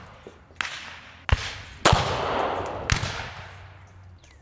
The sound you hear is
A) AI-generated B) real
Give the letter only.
B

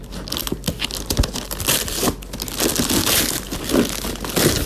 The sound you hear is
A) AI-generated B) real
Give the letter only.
B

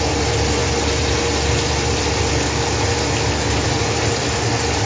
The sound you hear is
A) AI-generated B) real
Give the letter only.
B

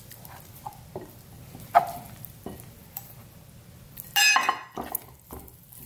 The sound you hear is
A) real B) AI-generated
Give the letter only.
A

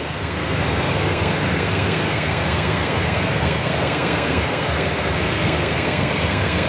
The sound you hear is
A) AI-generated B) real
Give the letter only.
A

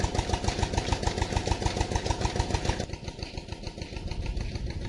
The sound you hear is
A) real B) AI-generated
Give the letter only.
A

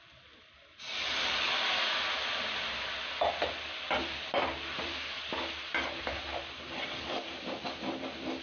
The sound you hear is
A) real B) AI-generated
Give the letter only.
B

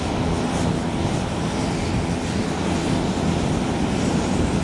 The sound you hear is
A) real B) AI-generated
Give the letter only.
A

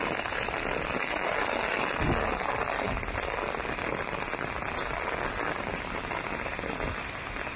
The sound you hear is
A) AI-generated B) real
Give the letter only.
B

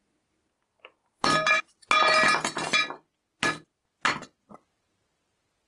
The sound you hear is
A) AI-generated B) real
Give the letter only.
B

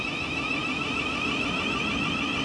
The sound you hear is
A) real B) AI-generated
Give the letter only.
A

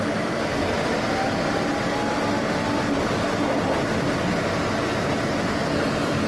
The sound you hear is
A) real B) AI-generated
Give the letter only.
A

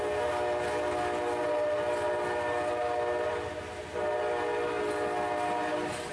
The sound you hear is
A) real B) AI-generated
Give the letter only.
A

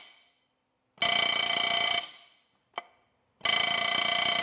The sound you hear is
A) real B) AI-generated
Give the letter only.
A